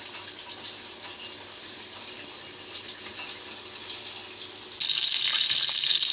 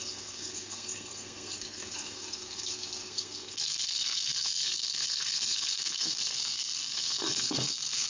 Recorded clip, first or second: first